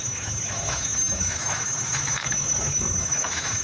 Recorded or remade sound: remade